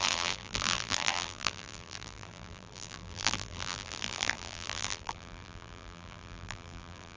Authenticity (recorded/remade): remade